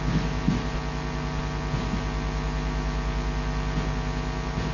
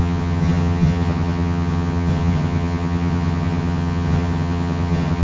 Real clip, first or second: first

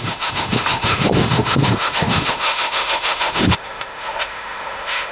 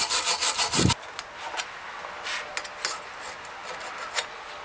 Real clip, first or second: second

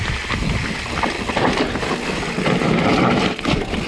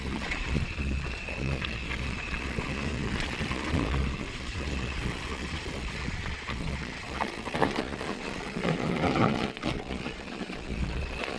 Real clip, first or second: first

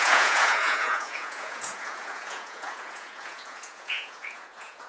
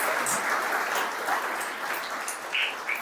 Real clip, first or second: second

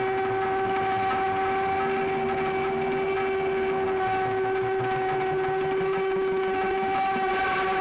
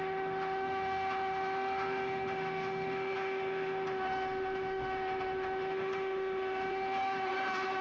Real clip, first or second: first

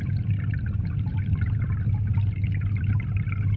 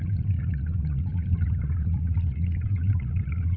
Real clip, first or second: first